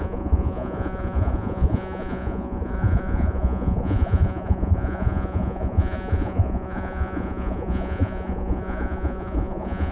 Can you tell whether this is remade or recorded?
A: remade